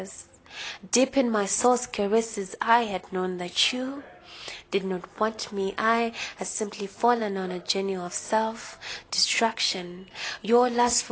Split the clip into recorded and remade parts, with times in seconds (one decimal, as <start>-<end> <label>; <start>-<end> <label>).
0.0-11.1 recorded